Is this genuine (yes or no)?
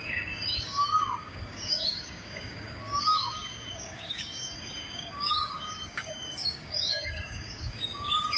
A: no